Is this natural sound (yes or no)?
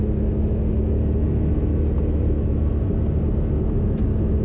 yes